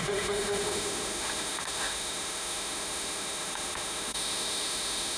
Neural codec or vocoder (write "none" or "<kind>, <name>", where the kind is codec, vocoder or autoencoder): autoencoder, DAC-VAE